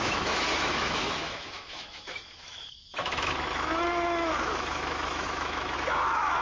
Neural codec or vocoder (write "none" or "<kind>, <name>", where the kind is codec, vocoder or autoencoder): autoencoder, DAC-VAE